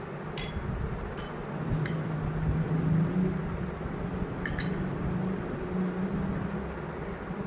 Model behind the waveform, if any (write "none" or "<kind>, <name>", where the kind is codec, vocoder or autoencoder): none